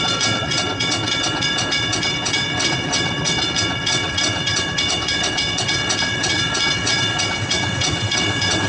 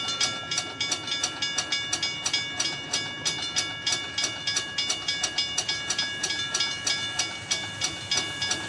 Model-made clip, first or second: first